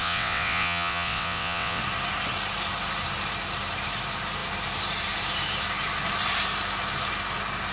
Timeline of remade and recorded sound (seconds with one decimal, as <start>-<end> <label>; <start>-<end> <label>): 0.0-1.8 remade; 1.8-7.7 recorded